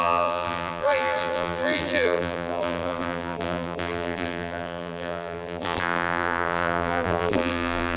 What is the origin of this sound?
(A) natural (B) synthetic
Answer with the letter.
B